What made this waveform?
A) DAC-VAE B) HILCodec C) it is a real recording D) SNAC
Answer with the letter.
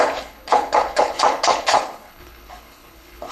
B